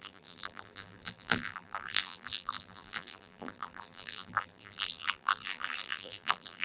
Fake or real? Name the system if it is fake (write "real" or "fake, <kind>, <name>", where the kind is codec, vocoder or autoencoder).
fake, vocoder, BigVGAN v2